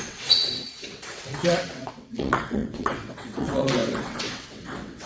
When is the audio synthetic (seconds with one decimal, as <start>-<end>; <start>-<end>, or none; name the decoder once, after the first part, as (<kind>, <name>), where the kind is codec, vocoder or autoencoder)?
0.0-5.1 (vocoder, WaveNeXt)